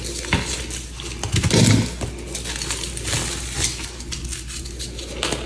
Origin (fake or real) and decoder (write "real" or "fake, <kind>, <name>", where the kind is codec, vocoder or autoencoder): real